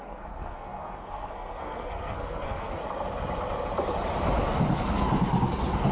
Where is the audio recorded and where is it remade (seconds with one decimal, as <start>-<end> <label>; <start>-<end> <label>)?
0.0-2.8 remade; 2.8-5.9 recorded